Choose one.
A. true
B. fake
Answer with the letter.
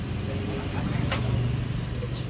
A